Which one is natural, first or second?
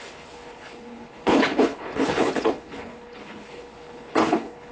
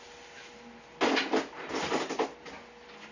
second